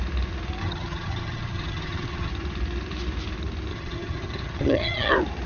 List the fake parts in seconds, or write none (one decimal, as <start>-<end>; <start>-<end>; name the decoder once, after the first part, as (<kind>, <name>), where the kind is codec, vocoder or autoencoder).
0.6-2.3 (vocoder, HiFi-GAN); 3.7-5.1

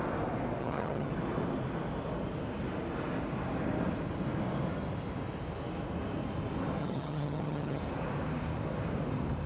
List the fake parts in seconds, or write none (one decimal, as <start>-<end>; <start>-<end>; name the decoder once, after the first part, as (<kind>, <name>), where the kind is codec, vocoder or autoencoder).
0.6-1.1 (vocoder, HiFi-GAN); 6.8-7.8

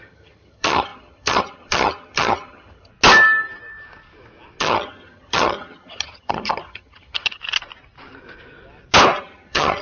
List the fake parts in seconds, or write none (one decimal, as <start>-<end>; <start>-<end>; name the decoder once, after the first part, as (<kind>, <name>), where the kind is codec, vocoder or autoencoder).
0.0-2.9 (vocoder, HiFi-GAN); 4.6-7.4; 9.2-9.8

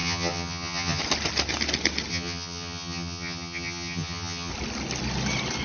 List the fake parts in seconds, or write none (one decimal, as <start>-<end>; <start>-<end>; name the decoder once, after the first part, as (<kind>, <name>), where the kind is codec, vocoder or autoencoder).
0.0-1.0 (vocoder, HiFi-GAN); 2.1-4.5

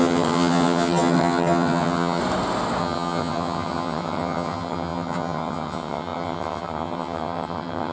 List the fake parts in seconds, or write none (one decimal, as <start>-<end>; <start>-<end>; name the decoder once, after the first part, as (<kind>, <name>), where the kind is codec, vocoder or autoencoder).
0.0-2.2 (vocoder, HiFi-GAN); 2.8-7.9

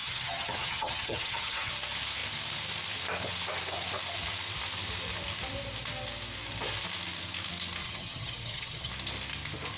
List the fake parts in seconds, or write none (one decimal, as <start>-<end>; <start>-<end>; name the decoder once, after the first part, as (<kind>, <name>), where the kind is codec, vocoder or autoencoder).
0.0-1.7 (vocoder, HiFi-GAN); 7.8-8.9

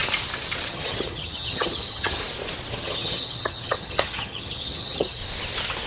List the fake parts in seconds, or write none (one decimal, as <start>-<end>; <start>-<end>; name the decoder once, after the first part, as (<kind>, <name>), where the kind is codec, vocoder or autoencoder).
0.7-2.2 (vocoder, HiFi-GAN); 2.7-5.2